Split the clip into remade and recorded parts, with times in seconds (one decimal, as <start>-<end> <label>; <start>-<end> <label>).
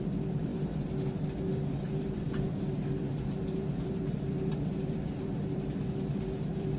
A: 0.0-0.5 remade; 0.5-1.7 recorded; 1.7-6.8 remade